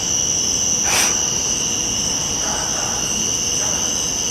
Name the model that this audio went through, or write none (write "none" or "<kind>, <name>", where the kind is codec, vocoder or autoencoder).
vocoder, BigVGAN v2